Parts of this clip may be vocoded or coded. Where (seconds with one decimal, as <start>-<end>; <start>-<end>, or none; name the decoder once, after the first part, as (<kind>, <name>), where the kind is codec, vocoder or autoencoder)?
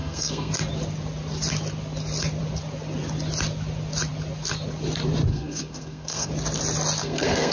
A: 0.0-0.5 (codec, SNAC); 5.3-6.3; 7.0-7.5